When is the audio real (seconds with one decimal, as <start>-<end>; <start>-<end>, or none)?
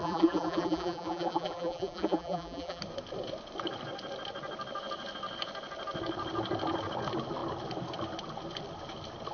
2.8-9.3